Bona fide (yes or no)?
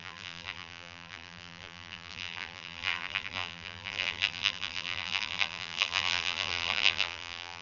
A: no